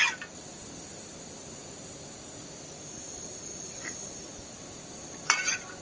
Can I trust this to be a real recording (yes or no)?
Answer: yes